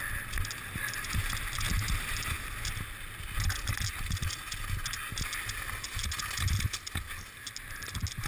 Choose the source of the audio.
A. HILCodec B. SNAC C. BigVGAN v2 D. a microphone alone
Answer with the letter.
D